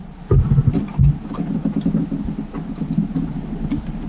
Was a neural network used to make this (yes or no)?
no